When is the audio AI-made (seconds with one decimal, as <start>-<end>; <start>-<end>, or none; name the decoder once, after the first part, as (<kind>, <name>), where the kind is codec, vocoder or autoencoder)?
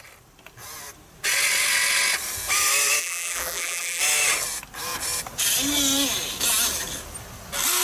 3.0-4.0 (vocoder, BigVGAN v2)